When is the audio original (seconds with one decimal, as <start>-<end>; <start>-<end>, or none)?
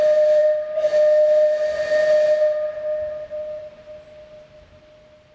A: 0.0-5.3